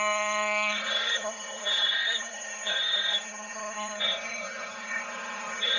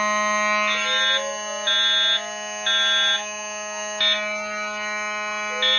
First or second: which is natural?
second